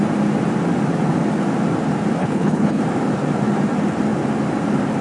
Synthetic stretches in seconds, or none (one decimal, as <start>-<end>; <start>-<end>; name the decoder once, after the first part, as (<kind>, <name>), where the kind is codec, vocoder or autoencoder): 2.2-2.8 (codec, HILCodec)